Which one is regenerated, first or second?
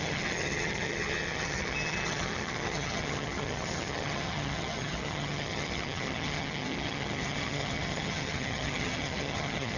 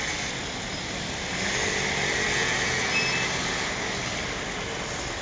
first